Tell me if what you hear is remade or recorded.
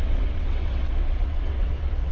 remade